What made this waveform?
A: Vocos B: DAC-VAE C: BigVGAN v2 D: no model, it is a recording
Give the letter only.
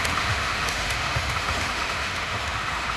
B